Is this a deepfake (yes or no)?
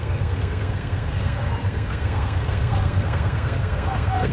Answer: yes